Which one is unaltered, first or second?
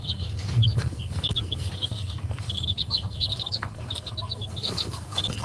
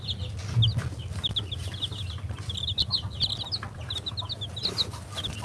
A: second